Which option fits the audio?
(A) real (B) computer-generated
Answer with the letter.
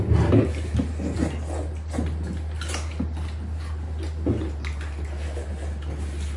A